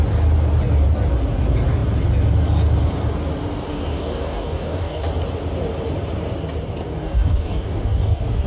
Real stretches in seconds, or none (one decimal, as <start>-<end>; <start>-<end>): 0.0-3.7; 5.0-6.9